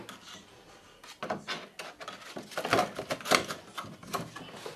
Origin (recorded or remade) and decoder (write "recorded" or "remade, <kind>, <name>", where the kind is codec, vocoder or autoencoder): recorded